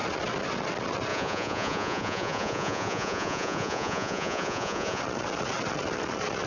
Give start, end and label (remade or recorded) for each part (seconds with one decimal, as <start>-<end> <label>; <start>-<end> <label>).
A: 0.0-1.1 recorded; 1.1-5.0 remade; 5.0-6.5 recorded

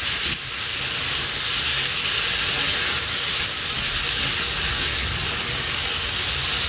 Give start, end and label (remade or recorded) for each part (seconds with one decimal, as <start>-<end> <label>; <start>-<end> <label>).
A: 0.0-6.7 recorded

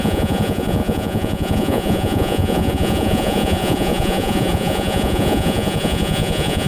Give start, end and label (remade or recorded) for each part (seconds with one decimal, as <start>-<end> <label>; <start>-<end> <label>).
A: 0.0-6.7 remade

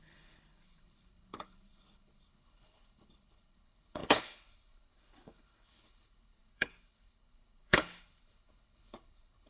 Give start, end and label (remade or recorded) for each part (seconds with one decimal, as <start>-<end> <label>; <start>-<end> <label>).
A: 0.0-9.5 remade